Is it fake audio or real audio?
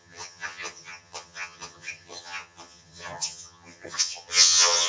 fake